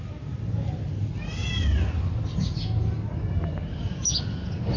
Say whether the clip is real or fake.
real